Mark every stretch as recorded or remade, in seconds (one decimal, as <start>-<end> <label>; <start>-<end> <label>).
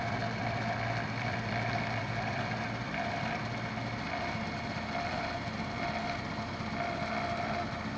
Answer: 0.0-3.4 remade; 3.4-8.0 recorded